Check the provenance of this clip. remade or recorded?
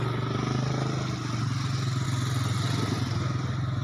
recorded